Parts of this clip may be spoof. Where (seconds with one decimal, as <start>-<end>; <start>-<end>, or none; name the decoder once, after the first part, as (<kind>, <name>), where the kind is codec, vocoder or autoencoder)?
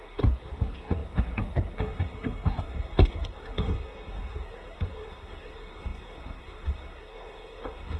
0.0-8.0 (codec, SNAC)